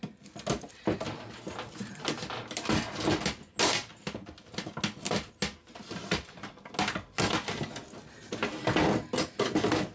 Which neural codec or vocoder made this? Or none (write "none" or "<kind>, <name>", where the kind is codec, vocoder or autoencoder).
none